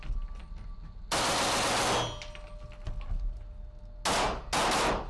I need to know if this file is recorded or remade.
recorded